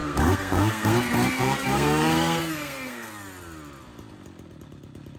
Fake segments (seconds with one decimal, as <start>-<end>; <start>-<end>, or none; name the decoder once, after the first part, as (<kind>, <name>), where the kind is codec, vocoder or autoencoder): 0.0-3.1 (codec, SNAC)

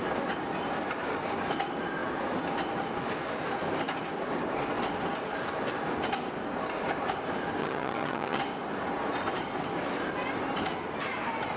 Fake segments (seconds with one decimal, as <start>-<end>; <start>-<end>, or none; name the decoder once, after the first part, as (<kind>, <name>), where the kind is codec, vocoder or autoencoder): 7.6-8.4 (vocoder, HiFi-GAN)

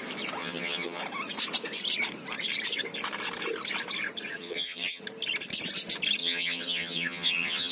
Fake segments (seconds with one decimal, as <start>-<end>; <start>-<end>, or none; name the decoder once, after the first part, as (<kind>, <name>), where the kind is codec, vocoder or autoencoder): 0.4-1.0 (vocoder, HiFi-GAN); 4.4-5.0; 6.2-7.7

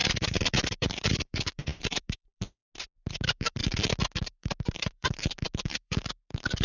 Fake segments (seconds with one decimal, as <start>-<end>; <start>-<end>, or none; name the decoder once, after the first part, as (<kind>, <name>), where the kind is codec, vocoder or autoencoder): 0.0-2.6 (vocoder, BigVGAN v2); 3.1-3.6; 4.2-6.6